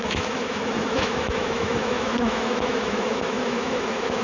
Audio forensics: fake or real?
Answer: fake